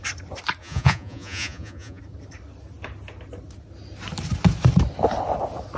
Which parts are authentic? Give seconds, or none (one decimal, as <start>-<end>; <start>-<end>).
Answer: 0.0-0.6; 2.0-5.8

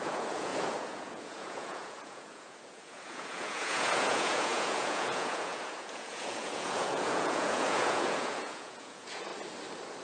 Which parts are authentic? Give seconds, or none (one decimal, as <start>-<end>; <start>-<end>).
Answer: 9.3-10.0

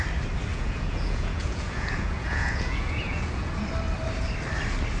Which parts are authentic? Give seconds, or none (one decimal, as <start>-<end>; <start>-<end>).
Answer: 0.0-0.5; 3.5-5.0